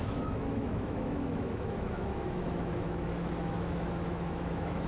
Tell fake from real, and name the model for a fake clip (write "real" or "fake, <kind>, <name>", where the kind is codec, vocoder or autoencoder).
fake, autoencoder, DAC-VAE